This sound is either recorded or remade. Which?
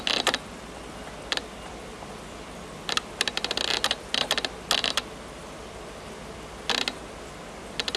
recorded